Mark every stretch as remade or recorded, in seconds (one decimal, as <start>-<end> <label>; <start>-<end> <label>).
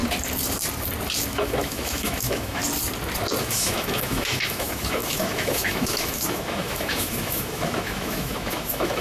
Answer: 0.0-1.3 recorded; 1.3-2.6 remade; 2.6-3.4 recorded; 3.4-9.0 remade